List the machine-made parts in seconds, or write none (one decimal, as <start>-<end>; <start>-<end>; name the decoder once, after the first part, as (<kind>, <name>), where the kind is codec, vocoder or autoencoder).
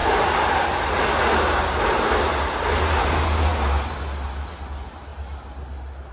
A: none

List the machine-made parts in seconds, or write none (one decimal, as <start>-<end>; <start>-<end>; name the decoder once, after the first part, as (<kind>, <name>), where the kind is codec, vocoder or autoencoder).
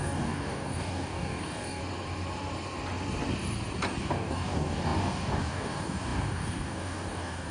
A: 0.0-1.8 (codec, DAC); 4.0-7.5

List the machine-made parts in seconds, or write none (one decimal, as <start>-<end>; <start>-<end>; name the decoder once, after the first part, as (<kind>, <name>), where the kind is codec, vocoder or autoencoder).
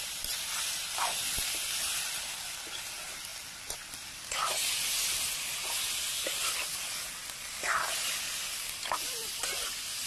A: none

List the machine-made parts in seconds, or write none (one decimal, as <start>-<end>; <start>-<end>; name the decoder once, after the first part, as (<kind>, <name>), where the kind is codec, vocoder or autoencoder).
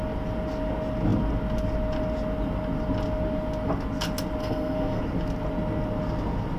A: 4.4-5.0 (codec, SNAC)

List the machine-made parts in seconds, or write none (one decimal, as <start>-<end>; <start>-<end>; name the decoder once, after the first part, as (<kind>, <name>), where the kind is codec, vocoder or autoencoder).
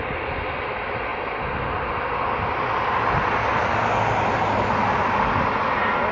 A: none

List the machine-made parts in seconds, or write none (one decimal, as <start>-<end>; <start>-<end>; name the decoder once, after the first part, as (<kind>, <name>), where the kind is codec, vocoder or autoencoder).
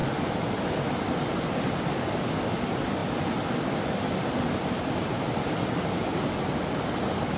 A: none